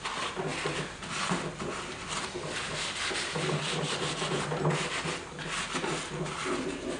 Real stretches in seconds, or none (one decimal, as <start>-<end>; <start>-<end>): 0.0-7.0